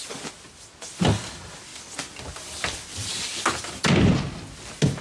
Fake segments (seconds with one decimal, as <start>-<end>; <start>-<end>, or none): 1.7-3.1